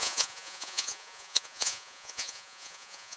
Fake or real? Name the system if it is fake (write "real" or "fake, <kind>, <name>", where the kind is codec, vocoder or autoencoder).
fake, vocoder, Vocos